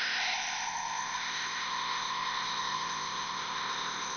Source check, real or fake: fake